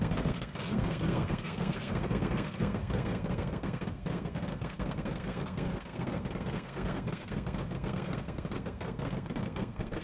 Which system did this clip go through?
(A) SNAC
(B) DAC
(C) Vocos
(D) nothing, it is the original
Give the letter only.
A